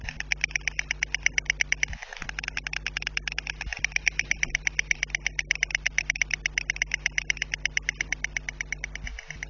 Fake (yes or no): no